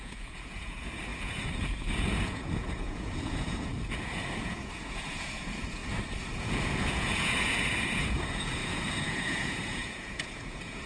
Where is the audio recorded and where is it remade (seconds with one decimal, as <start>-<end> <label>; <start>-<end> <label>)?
0.0-5.8 remade; 5.8-6.4 recorded; 6.4-10.9 remade